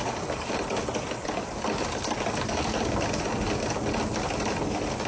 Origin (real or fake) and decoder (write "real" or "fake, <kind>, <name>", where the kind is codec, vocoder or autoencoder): real